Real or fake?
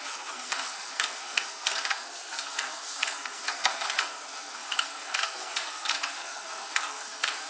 fake